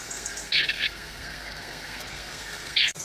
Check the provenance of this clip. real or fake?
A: fake